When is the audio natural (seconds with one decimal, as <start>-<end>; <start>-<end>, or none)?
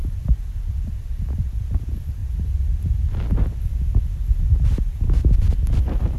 1.6-2.2; 3.8-6.2